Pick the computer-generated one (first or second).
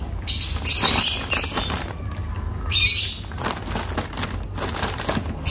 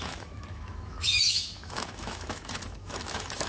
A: second